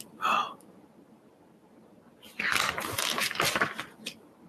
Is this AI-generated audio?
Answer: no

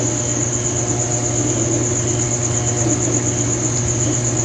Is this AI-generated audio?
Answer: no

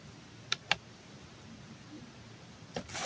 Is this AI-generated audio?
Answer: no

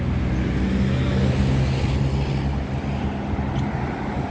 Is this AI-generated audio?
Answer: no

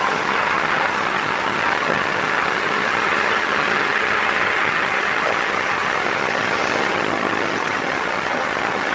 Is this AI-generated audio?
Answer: yes